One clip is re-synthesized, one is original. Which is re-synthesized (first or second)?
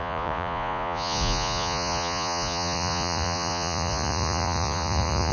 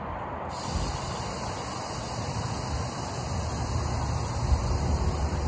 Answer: first